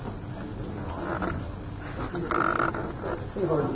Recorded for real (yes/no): yes